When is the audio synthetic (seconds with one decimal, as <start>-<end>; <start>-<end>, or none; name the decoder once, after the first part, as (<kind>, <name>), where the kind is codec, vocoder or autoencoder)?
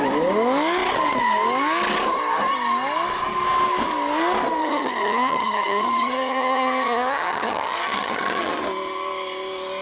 4.6-8.5 (vocoder, HiFi-GAN)